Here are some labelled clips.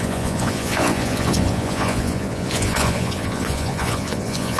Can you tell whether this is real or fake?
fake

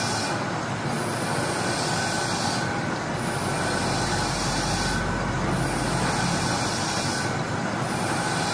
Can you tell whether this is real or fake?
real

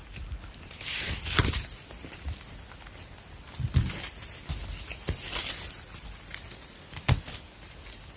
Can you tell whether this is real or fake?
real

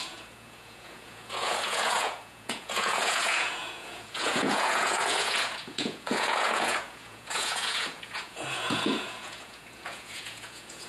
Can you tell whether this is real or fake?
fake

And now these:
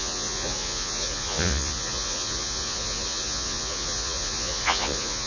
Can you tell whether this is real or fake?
fake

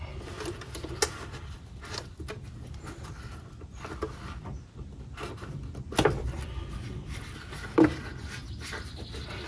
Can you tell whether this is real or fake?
real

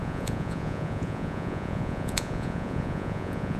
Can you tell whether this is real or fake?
fake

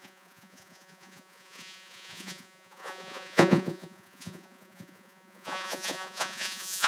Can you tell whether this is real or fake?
fake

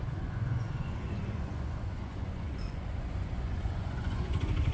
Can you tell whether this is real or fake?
fake